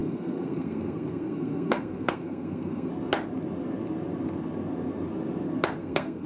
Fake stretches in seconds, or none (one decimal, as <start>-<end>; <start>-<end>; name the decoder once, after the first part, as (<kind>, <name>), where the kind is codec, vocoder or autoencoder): 0.0-2.9 (codec, SNAC); 5.8-6.3